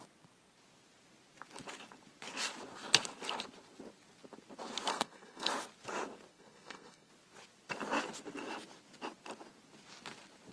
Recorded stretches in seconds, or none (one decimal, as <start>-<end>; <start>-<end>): 0.0-4.9; 5.5-6.3; 7.1-10.5